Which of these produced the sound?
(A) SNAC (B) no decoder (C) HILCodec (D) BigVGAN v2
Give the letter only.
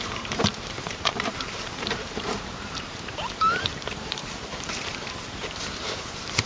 D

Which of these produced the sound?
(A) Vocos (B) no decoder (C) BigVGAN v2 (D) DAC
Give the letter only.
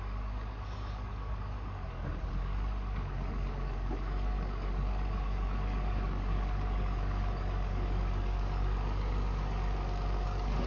D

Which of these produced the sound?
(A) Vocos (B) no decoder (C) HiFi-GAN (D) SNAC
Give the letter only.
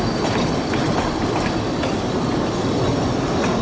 B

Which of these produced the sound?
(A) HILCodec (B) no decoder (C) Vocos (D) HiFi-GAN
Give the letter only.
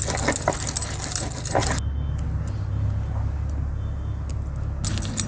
B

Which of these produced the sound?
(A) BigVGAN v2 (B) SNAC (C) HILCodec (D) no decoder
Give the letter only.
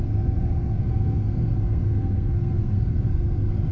B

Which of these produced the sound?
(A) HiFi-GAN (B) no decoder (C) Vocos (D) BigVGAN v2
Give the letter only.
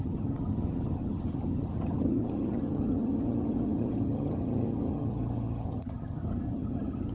A